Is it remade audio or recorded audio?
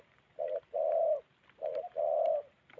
recorded